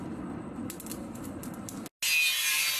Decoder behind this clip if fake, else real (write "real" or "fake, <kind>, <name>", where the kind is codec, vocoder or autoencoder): real